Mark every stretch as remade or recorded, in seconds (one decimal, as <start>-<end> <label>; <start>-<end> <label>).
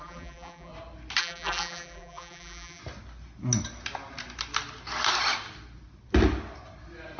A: 0.0-0.7 remade; 0.7-1.2 recorded; 1.2-2.8 remade; 2.8-7.2 recorded